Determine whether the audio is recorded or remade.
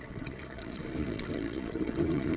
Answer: remade